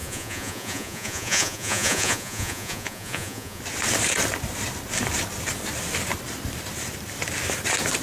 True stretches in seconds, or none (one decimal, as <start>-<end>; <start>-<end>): 3.6-8.0